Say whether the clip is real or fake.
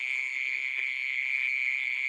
fake